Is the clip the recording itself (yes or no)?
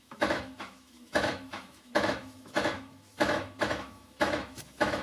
no